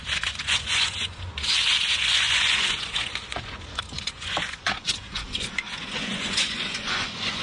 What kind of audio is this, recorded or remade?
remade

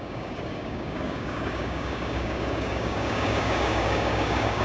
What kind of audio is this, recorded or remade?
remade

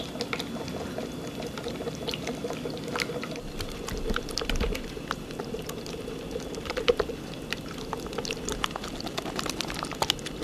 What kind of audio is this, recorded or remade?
recorded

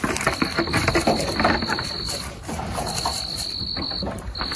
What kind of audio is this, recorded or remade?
recorded